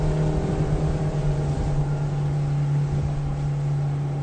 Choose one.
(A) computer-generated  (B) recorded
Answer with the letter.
B